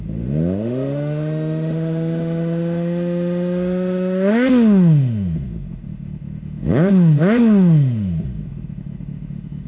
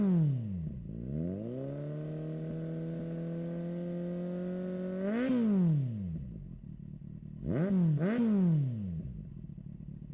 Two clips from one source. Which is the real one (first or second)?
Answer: second